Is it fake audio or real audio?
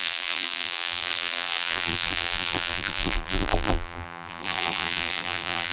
fake